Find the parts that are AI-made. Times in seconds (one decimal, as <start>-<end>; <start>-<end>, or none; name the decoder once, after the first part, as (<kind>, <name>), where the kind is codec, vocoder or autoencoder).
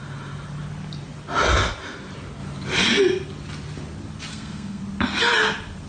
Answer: 4.3-4.8 (codec, SNAC)